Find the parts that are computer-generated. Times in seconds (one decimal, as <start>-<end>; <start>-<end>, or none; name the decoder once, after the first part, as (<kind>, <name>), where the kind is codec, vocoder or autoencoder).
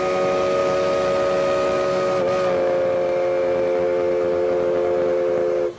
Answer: none